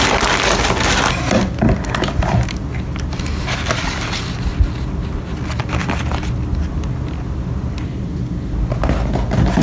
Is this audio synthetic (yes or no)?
no